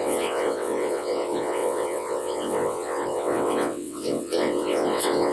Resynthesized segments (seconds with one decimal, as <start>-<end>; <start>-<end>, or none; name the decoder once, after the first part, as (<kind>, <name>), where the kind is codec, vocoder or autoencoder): 0.0-5.3 (vocoder, WaveNeXt)